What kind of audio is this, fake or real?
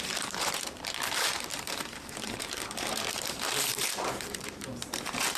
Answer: fake